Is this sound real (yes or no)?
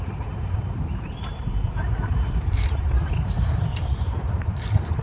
no